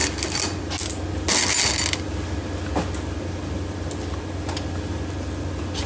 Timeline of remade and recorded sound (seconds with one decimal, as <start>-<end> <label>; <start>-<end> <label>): 0.0-5.9 recorded